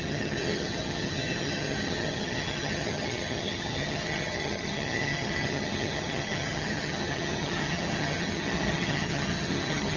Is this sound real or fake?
fake